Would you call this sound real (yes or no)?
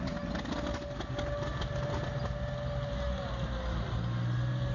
yes